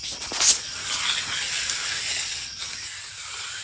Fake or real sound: real